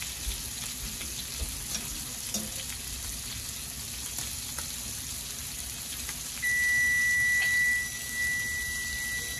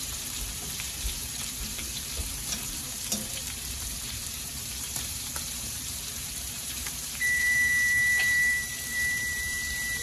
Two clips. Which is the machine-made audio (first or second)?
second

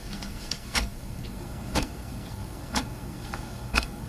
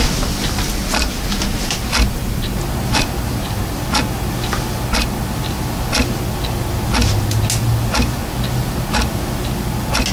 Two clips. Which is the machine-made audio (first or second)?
first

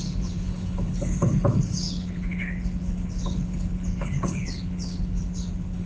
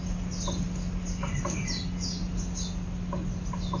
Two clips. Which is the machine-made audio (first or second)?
first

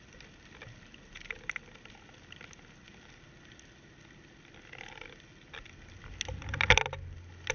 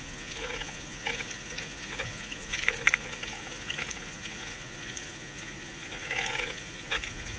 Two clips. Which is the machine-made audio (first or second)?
second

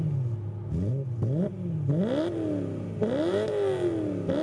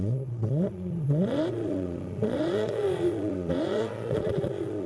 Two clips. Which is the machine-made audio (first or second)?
second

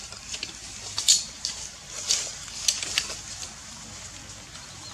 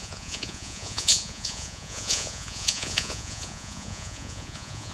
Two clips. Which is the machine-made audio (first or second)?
second